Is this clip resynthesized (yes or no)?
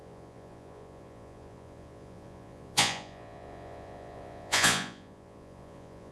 yes